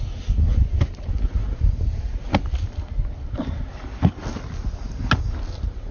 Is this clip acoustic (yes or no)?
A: yes